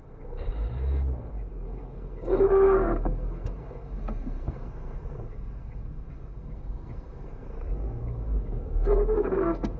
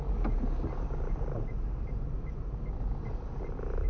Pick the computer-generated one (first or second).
first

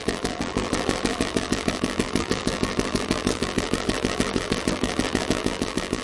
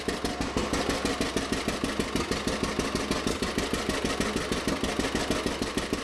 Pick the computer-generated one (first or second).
first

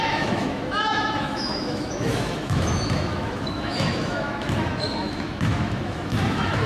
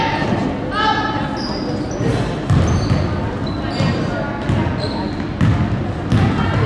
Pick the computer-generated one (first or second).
first